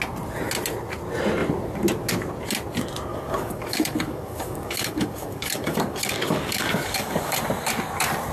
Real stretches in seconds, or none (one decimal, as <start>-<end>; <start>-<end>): 0.0-3.1; 7.4-8.3